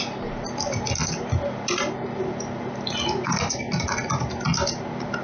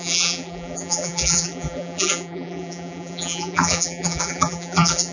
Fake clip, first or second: second